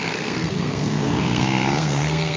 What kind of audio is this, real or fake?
fake